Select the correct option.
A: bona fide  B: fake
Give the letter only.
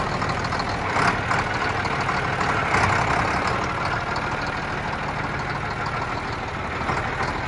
A